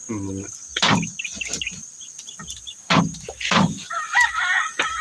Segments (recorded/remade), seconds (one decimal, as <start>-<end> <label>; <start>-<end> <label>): 0.0-5.0 recorded